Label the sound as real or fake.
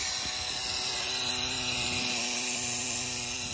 real